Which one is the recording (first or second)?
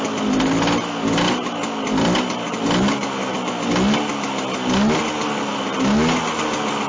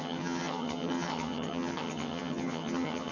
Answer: first